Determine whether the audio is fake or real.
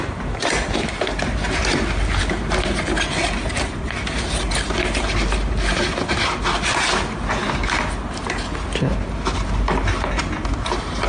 real